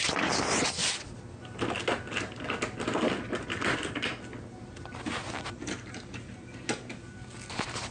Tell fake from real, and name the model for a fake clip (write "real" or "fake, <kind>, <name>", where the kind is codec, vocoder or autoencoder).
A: real